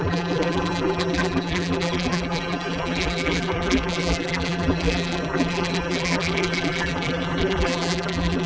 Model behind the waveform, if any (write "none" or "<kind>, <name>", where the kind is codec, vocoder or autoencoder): vocoder, BigVGAN v2